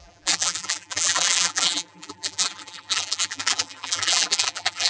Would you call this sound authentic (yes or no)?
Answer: no